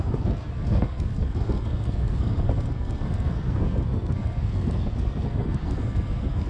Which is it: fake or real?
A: fake